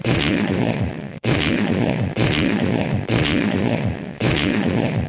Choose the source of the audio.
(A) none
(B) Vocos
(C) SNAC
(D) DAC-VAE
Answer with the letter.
B